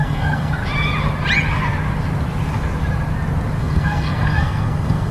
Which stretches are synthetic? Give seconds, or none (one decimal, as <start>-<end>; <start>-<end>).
0.0-0.6; 3.6-5.1